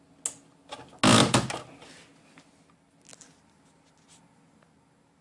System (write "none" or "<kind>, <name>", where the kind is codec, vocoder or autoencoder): none